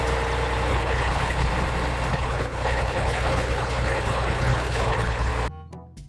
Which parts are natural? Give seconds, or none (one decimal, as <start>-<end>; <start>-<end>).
0.0-0.7; 1.5-2.1; 5.3-6.1